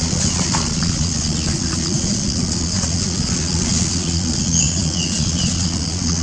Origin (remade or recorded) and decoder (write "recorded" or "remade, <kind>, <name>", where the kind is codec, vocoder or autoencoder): remade, vocoder, Vocos